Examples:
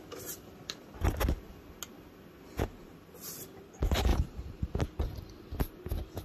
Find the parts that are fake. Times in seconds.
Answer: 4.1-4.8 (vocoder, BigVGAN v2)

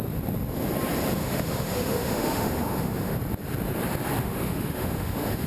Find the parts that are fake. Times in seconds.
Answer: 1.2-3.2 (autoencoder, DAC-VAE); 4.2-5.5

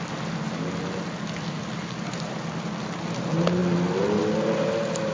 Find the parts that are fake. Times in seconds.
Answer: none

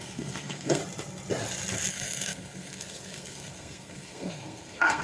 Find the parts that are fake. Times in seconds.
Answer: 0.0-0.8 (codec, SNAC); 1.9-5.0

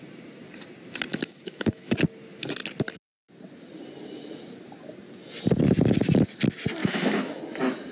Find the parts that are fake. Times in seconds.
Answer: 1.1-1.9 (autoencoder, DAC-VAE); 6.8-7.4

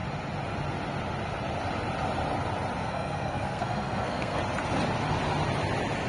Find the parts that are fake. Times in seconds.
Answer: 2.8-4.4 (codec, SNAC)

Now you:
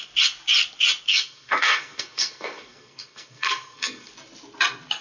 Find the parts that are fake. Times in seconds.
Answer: 1.1-4.1 (codec, SNAC)

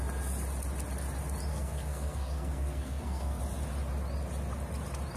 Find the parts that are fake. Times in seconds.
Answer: 1.5-3.4 (codec, SNAC)